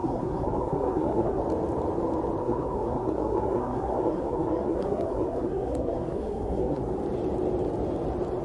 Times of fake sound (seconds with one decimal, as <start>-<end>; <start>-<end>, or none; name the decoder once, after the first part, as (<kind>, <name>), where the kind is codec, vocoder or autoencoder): 0.0-1.4 (codec, SNAC); 2.4-6.8